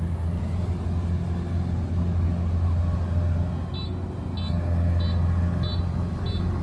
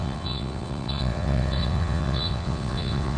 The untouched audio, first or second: first